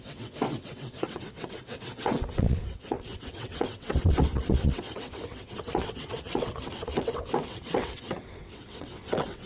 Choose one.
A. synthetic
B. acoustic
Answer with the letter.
A